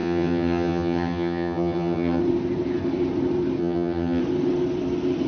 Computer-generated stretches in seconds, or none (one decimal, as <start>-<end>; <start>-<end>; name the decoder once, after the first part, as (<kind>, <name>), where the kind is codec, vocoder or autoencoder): 0.0-2.2 (vocoder, HiFi-GAN); 3.6-4.2